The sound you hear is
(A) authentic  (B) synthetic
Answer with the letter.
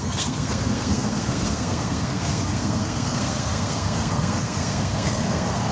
B